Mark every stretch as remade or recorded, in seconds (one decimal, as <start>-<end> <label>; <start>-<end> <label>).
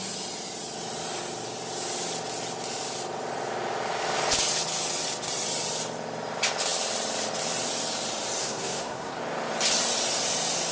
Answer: 0.0-8.4 recorded; 8.4-9.2 remade; 9.2-10.7 recorded